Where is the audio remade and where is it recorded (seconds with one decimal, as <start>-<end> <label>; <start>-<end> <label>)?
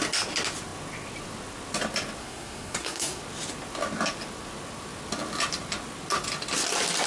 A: 0.0-2.2 recorded; 2.2-3.2 remade; 3.2-7.1 recorded